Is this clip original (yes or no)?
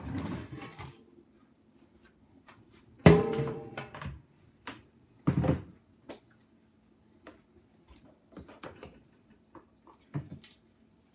no